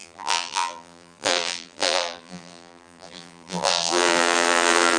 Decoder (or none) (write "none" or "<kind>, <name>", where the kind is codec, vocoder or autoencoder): vocoder, BigVGAN v2